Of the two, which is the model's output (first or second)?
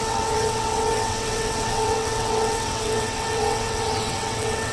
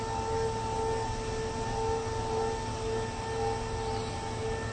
first